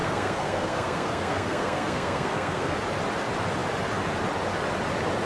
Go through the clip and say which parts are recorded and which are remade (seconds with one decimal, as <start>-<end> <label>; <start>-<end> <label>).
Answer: 0.0-2.8 remade; 2.8-5.3 recorded